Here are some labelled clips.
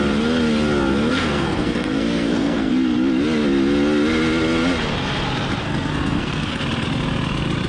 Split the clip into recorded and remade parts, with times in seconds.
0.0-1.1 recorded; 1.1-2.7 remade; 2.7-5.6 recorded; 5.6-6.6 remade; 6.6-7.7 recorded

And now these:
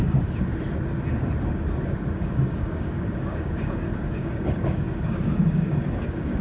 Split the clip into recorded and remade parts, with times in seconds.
0.0-0.5 remade; 0.5-2.1 recorded; 2.1-6.4 remade

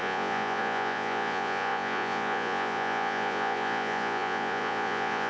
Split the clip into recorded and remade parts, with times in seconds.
0.0-5.3 remade

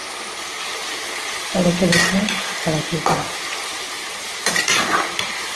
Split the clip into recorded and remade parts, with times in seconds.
0.0-5.6 recorded

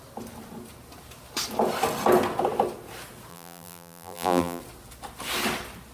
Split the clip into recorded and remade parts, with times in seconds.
0.0-3.3 recorded; 3.3-4.6 remade; 4.6-5.9 recorded